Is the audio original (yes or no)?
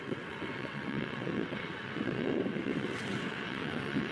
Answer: no